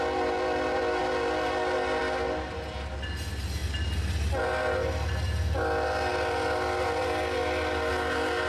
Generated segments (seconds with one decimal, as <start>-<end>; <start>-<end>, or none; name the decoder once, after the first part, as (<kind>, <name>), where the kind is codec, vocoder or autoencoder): none